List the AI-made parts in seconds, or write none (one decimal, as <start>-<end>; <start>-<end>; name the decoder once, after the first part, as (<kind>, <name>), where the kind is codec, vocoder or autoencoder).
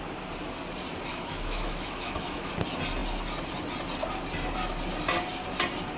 1.1-2.5 (autoencoder, DAC-VAE)